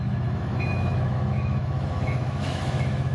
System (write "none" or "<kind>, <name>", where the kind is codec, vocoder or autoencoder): autoencoder, DAC-VAE